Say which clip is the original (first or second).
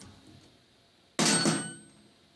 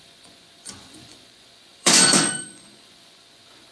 first